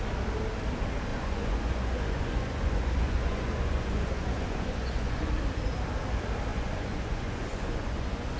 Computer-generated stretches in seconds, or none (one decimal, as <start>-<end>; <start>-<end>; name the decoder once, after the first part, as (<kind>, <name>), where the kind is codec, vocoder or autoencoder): 1.1-5.3 (vocoder, Vocos); 6.5-8.4